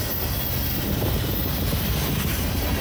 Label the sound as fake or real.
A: real